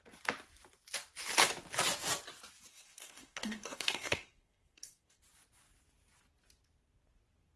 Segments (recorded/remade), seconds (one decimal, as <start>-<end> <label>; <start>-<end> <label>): 0.0-2.7 recorded; 2.7-5.2 remade; 5.2-7.6 recorded